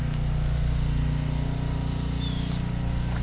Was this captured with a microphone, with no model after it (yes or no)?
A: yes